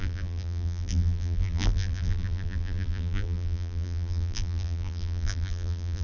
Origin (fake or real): fake